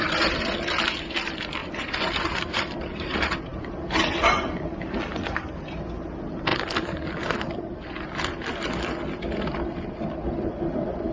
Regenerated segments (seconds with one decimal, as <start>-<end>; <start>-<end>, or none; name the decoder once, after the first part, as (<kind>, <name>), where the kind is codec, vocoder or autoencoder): 1.6-2.1 (vocoder, Vocos)